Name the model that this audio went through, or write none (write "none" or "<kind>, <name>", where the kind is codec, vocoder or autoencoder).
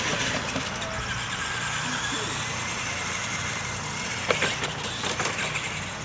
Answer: none